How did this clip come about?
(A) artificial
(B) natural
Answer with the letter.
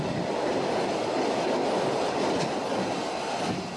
B